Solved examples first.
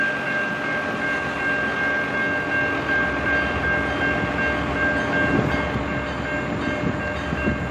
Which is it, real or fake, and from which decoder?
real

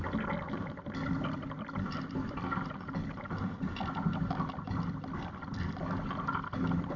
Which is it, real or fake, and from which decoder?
real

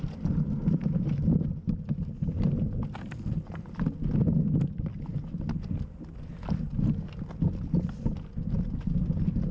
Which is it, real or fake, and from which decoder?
real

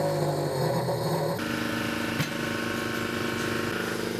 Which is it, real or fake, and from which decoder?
real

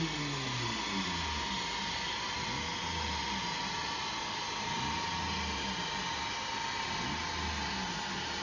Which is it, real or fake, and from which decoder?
real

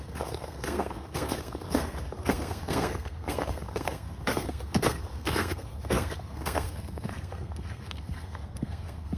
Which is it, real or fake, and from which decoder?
fake, codec, SNAC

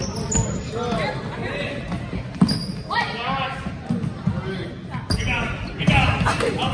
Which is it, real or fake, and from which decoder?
real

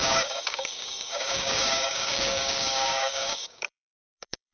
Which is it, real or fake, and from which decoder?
fake, codec, DAC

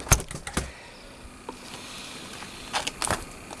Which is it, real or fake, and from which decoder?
real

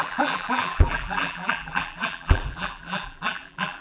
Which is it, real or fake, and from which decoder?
fake, vocoder, BigVGAN v2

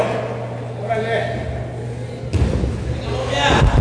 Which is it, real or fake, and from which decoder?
real